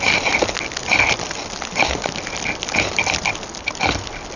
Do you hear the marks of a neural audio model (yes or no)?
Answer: no